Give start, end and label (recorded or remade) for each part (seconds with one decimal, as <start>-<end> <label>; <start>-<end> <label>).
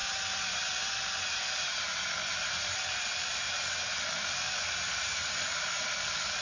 0.0-6.4 remade